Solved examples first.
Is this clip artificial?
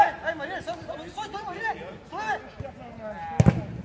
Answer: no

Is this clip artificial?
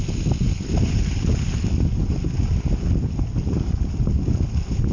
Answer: no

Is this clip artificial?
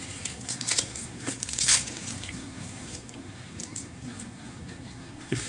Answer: yes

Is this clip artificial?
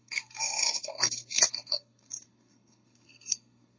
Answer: yes